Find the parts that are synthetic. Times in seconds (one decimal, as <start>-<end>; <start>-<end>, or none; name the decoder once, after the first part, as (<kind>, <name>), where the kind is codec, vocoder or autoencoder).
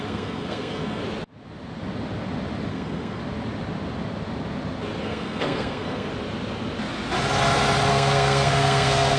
0.0-1.0 (codec, SNAC); 2.7-3.2; 5.0-6.1; 7.9-9.2